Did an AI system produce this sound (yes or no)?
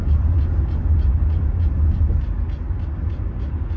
no